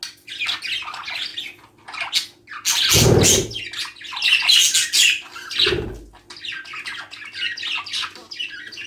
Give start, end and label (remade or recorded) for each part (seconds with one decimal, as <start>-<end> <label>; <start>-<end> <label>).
0.0-1.3 recorded; 1.3-2.0 remade; 2.0-8.9 recorded